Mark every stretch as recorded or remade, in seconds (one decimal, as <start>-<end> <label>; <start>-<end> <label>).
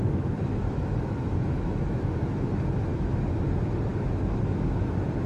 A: 0.0-3.2 remade; 3.2-3.9 recorded; 3.9-4.8 remade; 4.8-5.3 recorded